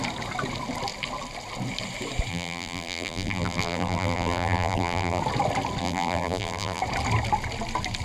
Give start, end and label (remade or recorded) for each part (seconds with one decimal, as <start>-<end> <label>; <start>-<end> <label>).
0.0-2.3 recorded; 2.3-5.2 remade; 5.2-5.8 recorded; 5.8-6.8 remade; 6.8-8.0 recorded